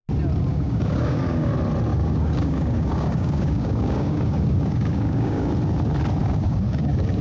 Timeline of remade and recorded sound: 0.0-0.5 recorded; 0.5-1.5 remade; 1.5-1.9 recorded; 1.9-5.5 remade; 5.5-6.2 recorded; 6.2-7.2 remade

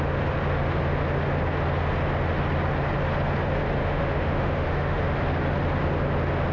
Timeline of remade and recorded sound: 0.0-3.8 recorded; 3.8-5.0 remade; 5.0-6.5 recorded

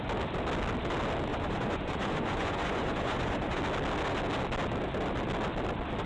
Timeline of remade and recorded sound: 0.0-1.3 recorded; 1.3-3.6 remade; 3.6-6.1 recorded

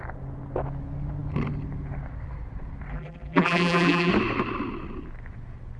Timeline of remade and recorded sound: 0.0-2.9 recorded; 2.9-4.1 remade; 4.1-5.8 recorded